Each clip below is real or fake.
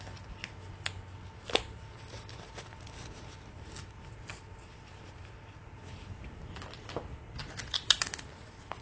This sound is real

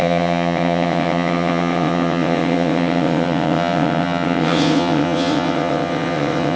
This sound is fake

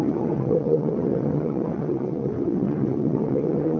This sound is fake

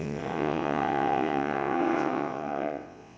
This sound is fake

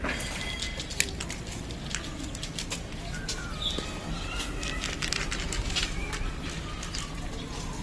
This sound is real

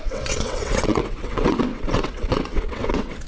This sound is fake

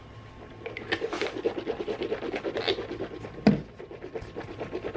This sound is real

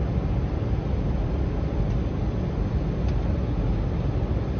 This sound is real